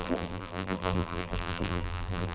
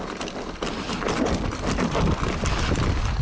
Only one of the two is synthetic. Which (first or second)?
first